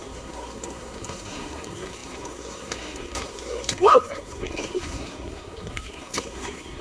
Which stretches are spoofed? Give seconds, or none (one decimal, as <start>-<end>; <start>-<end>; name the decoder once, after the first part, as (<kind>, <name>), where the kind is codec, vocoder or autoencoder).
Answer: 0.0-6.8 (codec, SNAC)